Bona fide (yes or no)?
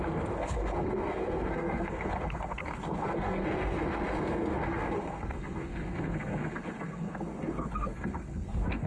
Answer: no